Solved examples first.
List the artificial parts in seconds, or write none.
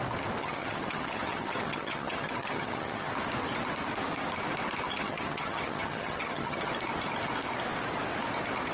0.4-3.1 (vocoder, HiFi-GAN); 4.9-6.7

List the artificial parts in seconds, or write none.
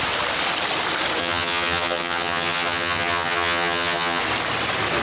1.2-4.2 (vocoder, HiFi-GAN)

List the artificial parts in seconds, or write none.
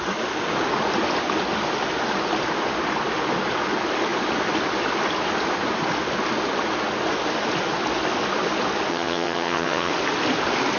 8.9-9.9 (vocoder, HiFi-GAN)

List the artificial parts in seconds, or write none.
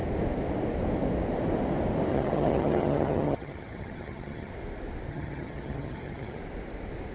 2.1-4.5 (vocoder, HiFi-GAN); 5.1-6.4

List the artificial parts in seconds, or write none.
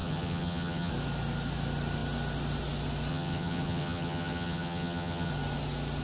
0.0-0.9 (vocoder, HiFi-GAN); 3.1-5.3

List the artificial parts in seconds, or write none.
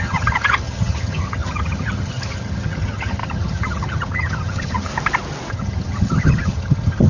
0.0-4.9 (vocoder, HiFi-GAN); 5.5-7.1